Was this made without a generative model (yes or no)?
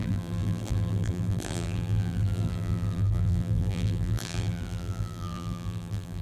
no